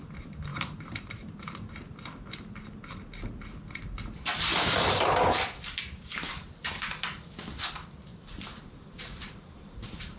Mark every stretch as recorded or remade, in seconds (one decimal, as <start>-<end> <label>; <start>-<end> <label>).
0.0-0.5 recorded; 0.5-1.7 remade; 1.7-4.5 recorded; 4.5-5.0 remade; 5.0-8.1 recorded; 8.1-10.2 remade